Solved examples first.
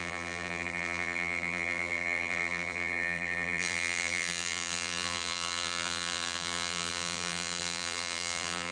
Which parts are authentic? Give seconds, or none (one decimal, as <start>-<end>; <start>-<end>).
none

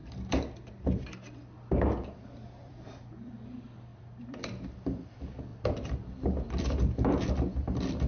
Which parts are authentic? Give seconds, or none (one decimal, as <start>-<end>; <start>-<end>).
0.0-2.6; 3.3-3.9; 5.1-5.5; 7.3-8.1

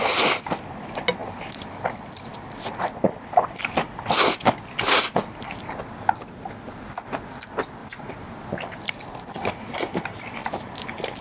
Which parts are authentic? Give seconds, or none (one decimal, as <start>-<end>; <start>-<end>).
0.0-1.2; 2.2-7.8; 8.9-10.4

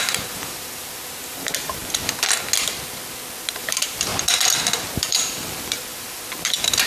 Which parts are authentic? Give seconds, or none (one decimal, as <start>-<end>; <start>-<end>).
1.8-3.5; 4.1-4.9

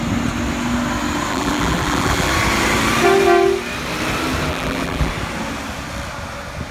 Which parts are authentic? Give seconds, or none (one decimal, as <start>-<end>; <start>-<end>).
0.0-1.3; 2.3-4.5; 5.1-6.7

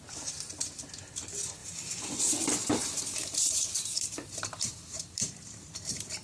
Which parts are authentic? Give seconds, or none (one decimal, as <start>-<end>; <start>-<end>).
0.0-1.6; 2.2-2.7; 5.7-6.2

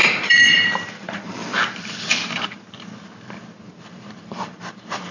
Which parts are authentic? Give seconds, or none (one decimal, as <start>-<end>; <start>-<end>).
1.4-3.7

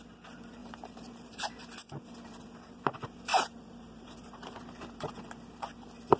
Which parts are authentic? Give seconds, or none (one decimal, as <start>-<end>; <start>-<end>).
0.0-0.6; 1.4-3.3; 5.1-6.2